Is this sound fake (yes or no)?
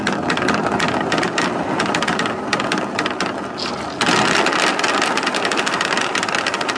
no